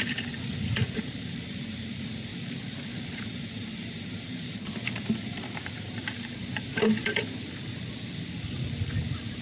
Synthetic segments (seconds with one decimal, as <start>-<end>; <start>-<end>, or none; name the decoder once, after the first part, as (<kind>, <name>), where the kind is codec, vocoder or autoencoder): 0.0-9.4 (vocoder, BigVGAN v2)